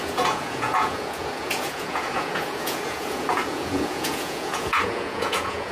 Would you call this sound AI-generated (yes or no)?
yes